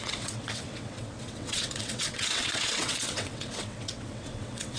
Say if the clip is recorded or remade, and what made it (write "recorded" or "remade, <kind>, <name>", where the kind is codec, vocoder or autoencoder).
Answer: remade, vocoder, WaveNeXt